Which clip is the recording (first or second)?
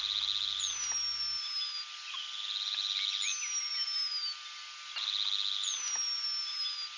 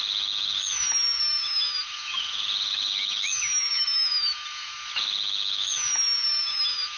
first